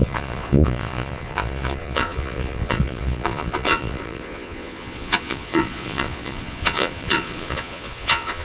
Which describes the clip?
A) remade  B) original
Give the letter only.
A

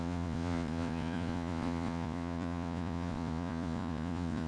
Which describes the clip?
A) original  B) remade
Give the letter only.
B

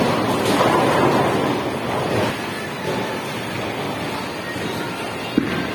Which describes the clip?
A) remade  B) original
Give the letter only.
B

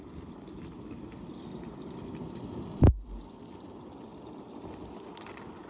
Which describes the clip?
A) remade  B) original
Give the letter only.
B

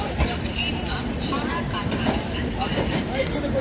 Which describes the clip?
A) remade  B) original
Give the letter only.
A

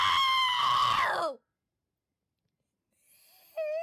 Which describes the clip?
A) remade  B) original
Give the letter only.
B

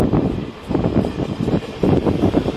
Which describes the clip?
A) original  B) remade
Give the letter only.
B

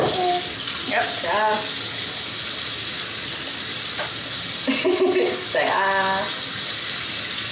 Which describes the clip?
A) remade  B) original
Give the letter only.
B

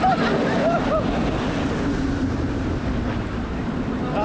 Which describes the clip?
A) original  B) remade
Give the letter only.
A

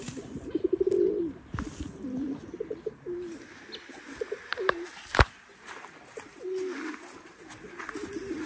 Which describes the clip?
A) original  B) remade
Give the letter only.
A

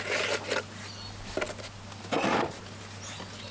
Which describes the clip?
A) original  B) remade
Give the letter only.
A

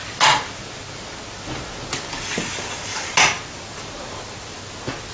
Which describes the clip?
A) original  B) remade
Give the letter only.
A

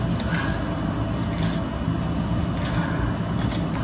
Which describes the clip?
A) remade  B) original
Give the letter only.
B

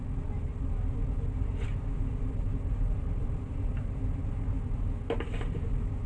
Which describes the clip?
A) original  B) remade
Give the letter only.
A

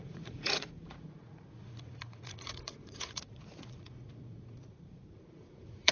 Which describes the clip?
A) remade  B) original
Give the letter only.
A